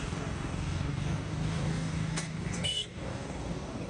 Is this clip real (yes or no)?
no